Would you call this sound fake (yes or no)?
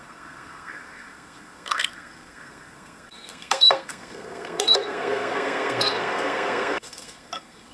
yes